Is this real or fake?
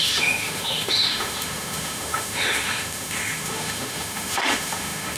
fake